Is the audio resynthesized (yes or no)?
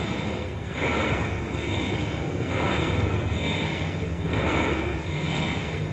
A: yes